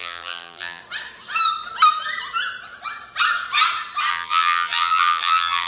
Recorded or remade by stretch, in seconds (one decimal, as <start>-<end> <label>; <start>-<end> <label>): 0.0-0.8 remade; 0.8-4.1 recorded; 4.1-5.7 remade